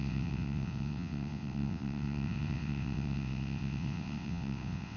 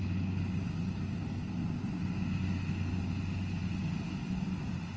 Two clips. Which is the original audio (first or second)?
second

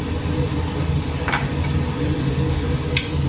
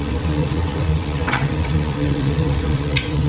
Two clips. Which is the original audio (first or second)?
first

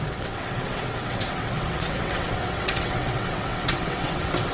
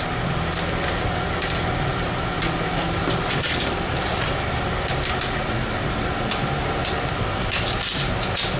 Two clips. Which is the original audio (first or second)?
second